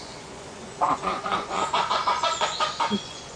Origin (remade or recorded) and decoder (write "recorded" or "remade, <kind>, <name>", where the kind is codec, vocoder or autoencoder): remade, vocoder, Vocos